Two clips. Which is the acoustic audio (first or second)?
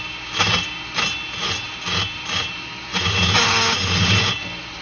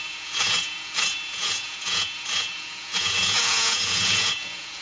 first